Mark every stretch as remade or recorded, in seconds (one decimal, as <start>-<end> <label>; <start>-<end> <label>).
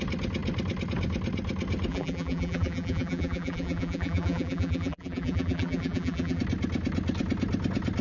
0.0-1.9 recorded; 1.9-6.4 remade; 6.4-8.0 recorded